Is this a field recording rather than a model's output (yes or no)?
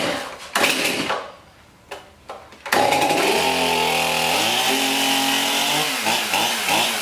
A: yes